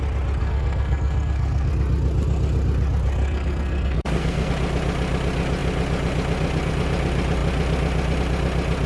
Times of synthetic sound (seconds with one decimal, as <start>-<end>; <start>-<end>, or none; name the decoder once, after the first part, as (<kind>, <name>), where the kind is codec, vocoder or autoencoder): 0.4-1.7 (codec, SNAC); 3.2-4.5